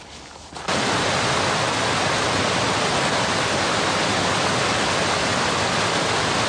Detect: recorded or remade recorded